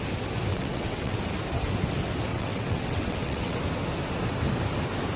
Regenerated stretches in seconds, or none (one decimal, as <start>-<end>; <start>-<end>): 0.5-1.2; 2.3-3.6